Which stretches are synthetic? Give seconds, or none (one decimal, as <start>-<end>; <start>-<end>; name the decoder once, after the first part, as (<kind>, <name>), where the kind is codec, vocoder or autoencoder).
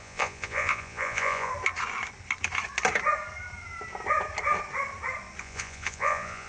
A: 0.0-1.5 (vocoder, Vocos); 5.4-6.5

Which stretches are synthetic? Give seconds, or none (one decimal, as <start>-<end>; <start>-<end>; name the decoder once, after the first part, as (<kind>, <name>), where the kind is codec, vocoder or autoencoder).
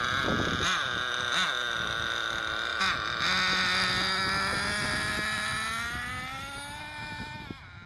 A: none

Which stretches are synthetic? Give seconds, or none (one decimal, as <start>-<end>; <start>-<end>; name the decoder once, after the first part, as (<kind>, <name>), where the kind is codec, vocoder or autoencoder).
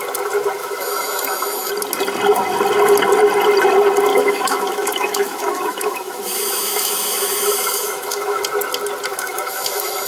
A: 0.6-1.7 (autoencoder, DAC-VAE); 4.1-8.4; 9.1-10.1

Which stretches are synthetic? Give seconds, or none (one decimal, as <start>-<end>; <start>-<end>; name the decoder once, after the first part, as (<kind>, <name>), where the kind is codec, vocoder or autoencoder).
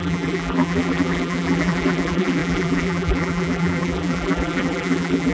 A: 0.0-5.3 (vocoder, BigVGAN v2)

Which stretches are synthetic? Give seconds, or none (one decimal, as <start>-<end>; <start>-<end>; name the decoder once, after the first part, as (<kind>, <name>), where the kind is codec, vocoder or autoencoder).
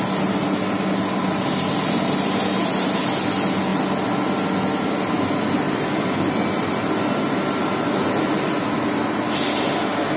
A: none